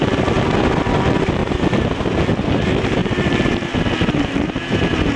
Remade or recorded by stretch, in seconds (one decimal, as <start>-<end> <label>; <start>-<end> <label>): 0.0-5.2 recorded